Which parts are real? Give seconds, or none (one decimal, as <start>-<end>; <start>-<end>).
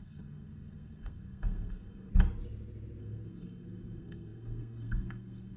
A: 2.1-3.0